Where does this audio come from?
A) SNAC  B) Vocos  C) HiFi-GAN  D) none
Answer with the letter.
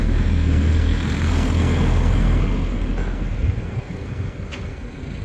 A